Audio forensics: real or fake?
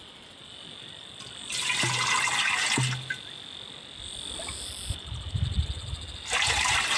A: real